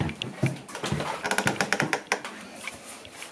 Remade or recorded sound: recorded